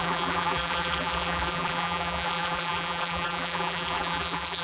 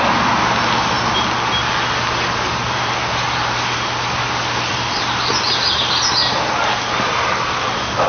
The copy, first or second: first